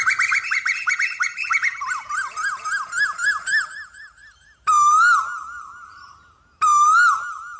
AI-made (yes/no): no